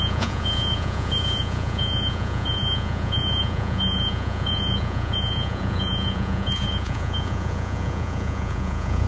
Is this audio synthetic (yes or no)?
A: yes